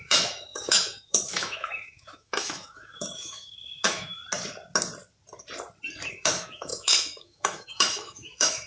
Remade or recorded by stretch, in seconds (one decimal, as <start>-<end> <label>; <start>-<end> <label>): 0.0-4.2 remade; 4.2-6.1 recorded; 6.1-8.7 remade